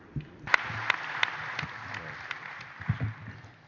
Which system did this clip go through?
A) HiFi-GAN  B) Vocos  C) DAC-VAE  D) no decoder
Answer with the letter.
D